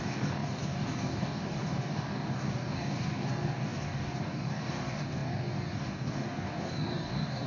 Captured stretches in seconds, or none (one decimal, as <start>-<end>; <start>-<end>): none